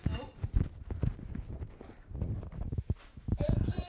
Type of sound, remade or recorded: recorded